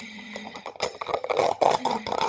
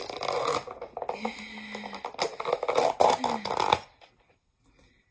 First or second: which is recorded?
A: second